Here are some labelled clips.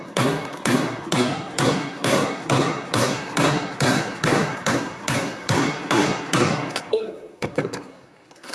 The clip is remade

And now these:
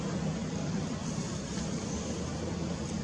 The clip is recorded